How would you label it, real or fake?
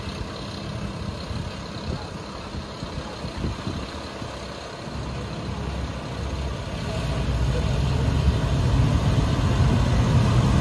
real